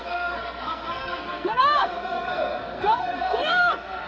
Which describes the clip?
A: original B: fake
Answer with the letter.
B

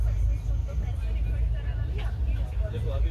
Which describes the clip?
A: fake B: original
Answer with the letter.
B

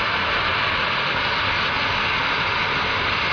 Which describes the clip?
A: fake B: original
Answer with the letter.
B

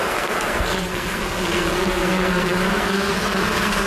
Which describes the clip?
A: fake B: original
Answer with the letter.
A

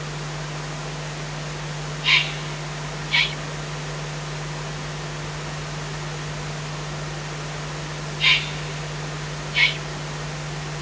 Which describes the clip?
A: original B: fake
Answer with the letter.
A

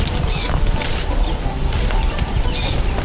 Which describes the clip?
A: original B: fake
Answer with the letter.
A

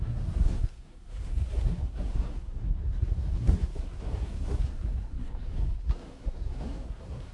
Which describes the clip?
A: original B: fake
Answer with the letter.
B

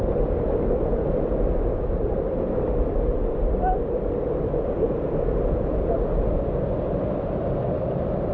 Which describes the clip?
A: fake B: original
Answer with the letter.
B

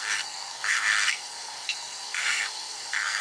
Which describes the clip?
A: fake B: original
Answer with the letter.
A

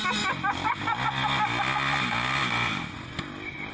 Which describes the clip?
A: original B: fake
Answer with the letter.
A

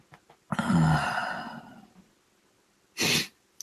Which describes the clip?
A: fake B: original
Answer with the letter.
B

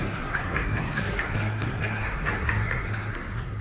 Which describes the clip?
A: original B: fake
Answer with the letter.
B